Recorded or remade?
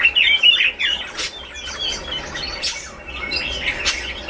recorded